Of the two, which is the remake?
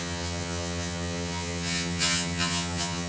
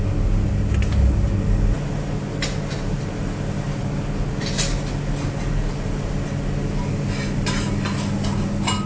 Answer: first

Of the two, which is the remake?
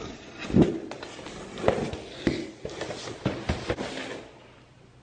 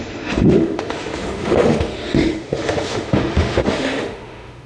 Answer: second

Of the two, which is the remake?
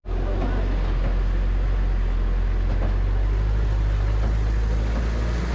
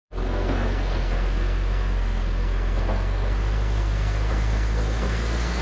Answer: second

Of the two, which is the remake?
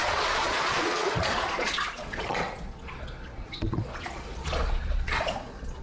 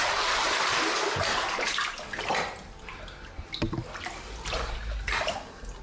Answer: first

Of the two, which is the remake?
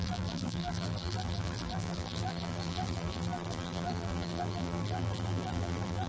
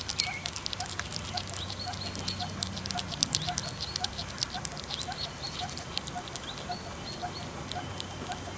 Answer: first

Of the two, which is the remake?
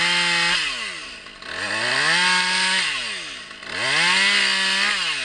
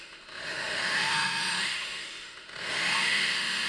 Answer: second